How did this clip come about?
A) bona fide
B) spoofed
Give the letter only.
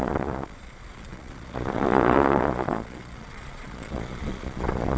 B